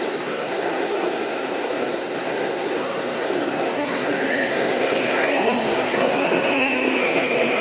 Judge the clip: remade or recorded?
remade